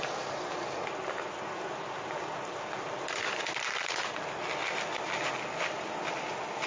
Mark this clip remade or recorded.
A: recorded